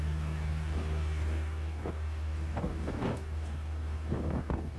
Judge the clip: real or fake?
fake